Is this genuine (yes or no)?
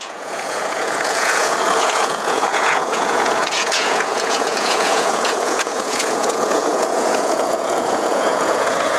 no